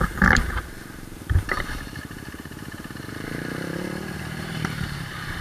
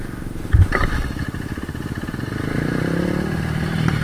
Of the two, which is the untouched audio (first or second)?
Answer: second